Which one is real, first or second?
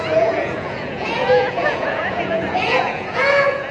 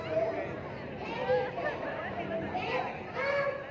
second